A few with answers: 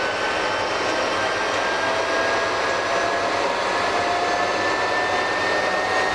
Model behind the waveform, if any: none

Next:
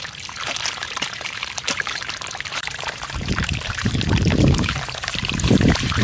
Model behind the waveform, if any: vocoder, BigVGAN v2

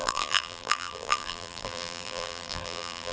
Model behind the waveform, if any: vocoder, BigVGAN v2